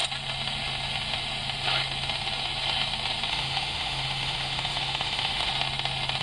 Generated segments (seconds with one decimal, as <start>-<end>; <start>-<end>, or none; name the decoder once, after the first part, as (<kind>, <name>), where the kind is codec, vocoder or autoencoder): 3.3-5.5 (autoencoder, DAC-VAE)